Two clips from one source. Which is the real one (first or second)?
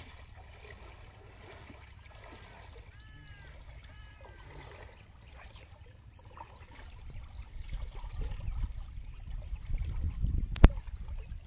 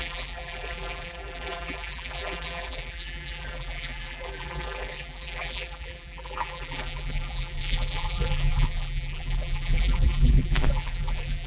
first